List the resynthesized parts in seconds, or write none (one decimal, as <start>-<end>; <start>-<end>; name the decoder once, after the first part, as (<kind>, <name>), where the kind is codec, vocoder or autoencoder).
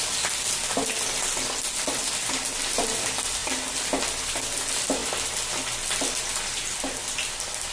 none